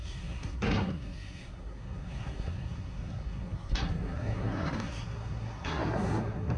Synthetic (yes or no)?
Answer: yes